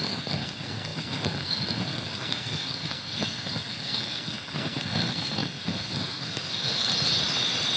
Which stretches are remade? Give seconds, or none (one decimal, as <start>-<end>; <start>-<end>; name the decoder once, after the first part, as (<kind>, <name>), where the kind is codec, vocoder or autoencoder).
0.0-6.9 (codec, SNAC)